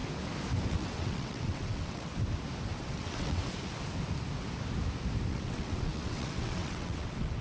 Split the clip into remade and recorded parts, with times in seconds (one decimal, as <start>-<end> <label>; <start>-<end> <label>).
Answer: 0.0-0.7 recorded; 0.7-2.1 remade; 2.1-2.8 recorded; 2.8-3.4 remade; 3.4-5.3 recorded; 5.3-7.4 remade